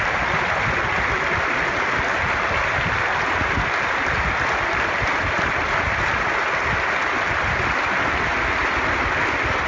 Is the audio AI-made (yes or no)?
no